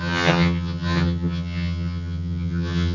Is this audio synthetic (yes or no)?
yes